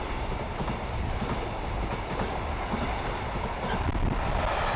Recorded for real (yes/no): yes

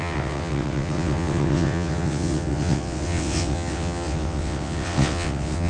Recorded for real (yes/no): no